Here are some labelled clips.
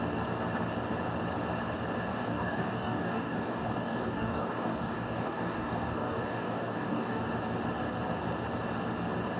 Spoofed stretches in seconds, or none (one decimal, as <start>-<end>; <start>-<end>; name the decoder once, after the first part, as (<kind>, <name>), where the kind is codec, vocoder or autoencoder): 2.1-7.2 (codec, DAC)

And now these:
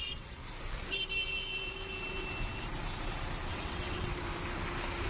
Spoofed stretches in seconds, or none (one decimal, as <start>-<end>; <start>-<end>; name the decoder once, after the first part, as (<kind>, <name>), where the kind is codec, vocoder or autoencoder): 0.0-0.4 (vocoder, WaveNeXt); 3.5-4.1

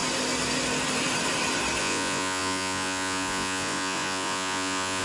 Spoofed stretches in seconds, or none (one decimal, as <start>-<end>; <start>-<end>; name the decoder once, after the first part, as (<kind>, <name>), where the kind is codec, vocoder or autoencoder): 1.8-5.0 (vocoder, Vocos)

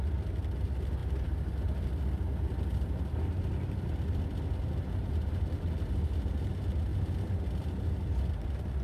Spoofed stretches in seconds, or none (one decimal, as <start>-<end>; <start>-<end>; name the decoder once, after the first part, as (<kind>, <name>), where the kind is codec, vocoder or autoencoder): 6.9-7.4 (vocoder, BigVGAN v2)

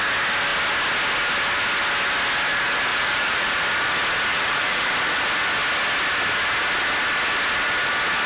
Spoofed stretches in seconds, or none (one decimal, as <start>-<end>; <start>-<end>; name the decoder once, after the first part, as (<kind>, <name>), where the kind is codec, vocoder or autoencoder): 2.9-3.6 (vocoder, Vocos); 4.3-4.9